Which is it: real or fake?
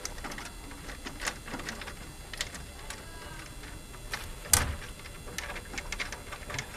real